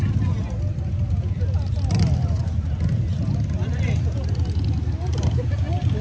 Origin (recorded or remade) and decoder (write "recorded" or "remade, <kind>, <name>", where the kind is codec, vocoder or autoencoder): recorded